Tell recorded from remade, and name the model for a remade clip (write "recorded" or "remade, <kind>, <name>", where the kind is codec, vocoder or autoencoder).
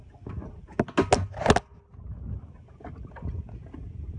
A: recorded